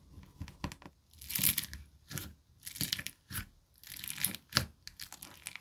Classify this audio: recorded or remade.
recorded